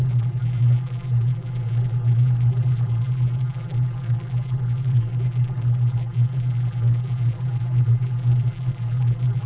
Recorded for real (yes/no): no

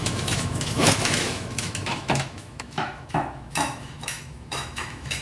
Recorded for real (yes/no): no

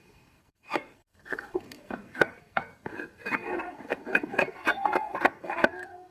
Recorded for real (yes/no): no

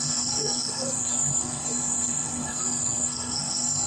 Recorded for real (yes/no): no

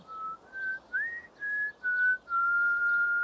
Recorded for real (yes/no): yes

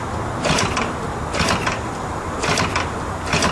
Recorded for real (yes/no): no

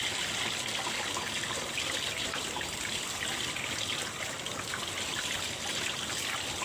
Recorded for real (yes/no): yes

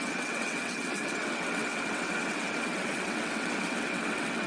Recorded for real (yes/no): no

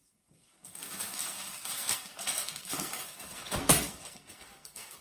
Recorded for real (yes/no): no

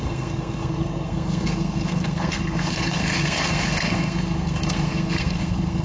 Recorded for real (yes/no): no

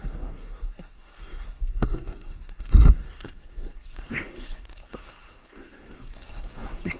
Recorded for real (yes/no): no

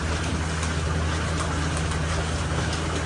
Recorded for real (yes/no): yes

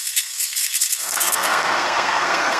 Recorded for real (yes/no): no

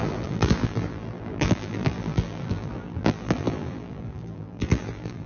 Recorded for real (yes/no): no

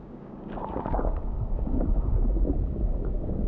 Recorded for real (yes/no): no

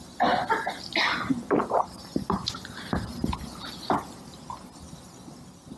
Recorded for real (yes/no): yes